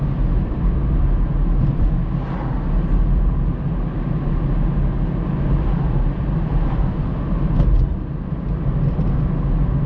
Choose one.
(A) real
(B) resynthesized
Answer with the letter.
A